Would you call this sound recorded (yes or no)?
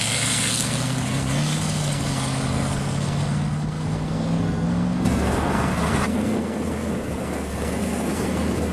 no